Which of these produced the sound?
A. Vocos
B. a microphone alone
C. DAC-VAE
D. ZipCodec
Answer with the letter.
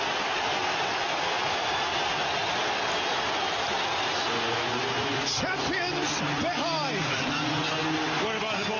B